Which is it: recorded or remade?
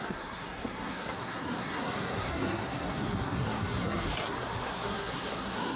remade